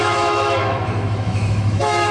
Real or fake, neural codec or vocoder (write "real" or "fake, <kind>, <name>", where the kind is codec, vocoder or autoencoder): fake, autoencoder, DAC-VAE